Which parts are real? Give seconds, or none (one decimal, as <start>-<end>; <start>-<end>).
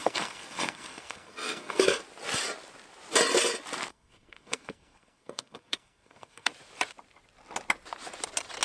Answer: 2.0-3.9; 6.5-8.6